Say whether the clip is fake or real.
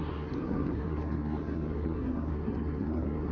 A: fake